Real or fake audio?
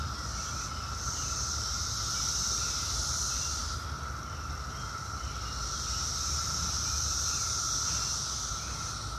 real